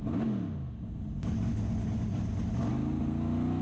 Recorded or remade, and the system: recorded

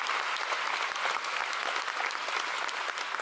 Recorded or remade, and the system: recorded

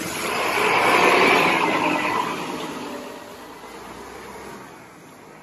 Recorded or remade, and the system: recorded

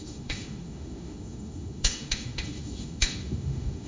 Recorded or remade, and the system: remade, autoencoder, DAC-VAE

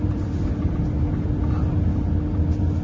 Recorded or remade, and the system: recorded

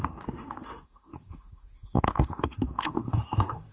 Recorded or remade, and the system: remade, autoencoder, DAC-VAE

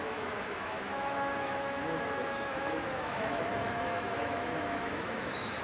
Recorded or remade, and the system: remade, autoencoder, DAC-VAE